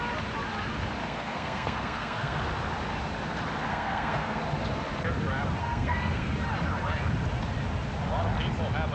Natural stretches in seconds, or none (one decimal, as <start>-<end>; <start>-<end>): 0.0-1.0; 2.4-3.7; 4.4-5.6; 6.3-8.9